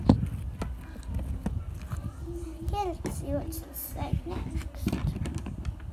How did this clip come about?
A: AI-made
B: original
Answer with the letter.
B